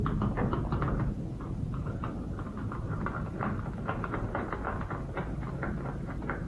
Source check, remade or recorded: recorded